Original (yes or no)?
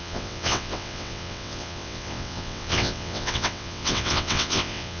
no